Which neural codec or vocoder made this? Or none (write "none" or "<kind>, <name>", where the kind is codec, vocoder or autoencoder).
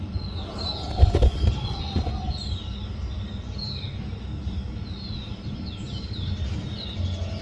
none